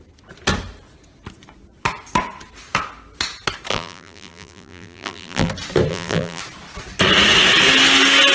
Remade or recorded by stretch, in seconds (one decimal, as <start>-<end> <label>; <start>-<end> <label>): 0.0-3.7 recorded; 3.7-5.5 remade; 5.5-5.9 recorded; 5.9-6.4 remade; 6.4-8.3 recorded

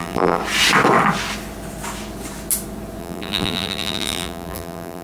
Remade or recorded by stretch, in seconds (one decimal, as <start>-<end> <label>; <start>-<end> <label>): 0.0-0.4 remade; 0.4-3.0 recorded; 3.0-5.0 remade